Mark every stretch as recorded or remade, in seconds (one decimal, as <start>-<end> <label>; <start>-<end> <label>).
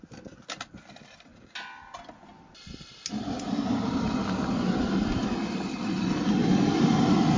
0.0-7.4 recorded